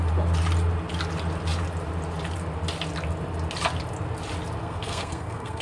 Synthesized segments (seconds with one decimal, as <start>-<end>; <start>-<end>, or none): 4.6-5.6